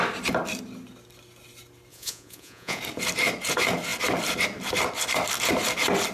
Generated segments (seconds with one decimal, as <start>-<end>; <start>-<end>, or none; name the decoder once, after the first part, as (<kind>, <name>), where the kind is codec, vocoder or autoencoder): 1.9-2.8 (vocoder, Vocos)